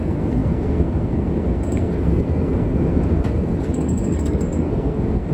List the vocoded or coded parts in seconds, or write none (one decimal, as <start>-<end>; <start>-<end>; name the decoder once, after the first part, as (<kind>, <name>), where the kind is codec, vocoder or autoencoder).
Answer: 0.0-5.3 (codec, SNAC)